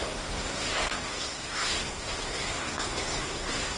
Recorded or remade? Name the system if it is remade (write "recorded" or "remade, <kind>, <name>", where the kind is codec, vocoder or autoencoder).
remade, codec, SNAC